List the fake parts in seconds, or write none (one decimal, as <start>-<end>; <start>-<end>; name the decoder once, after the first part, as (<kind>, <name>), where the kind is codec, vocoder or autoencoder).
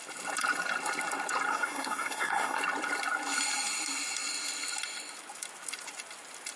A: 1.5-2.6 (codec, SNAC)